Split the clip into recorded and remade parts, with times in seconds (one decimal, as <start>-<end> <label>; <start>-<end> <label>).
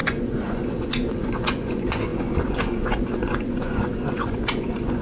0.0-5.0 remade